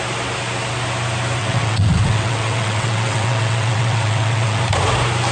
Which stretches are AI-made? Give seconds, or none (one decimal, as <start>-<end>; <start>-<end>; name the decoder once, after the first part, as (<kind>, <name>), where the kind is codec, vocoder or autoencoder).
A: 1.4-4.6 (vocoder, WaveNeXt)

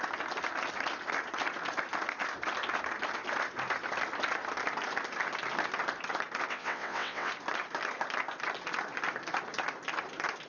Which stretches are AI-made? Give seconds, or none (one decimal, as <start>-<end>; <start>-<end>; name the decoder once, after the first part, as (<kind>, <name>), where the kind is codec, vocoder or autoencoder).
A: 6.5-7.3 (vocoder, WaveNeXt)

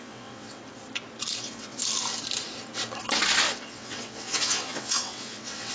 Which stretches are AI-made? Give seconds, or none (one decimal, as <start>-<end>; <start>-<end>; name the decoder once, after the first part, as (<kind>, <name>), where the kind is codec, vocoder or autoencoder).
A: 0.0-0.6 (vocoder, WaveNeXt); 1.4-1.8; 3.5-5.7

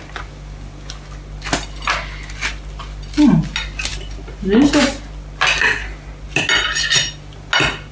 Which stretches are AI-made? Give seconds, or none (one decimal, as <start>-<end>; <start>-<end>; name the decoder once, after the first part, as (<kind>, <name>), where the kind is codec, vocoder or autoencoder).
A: none